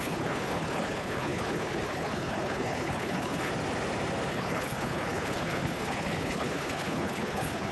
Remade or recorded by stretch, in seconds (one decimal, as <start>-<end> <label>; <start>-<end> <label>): 0.0-3.5 remade; 3.5-4.3 recorded; 4.3-7.7 remade